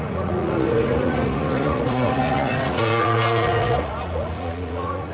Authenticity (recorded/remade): remade